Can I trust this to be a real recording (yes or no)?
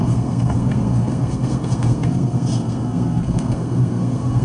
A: no